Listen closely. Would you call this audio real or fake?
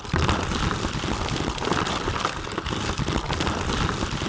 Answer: real